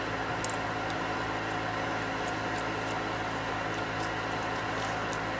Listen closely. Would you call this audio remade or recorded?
recorded